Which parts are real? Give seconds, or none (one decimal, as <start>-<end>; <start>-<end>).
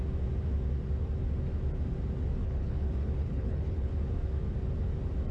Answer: 0.0-2.4; 3.9-5.3